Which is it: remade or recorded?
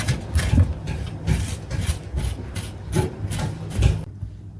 remade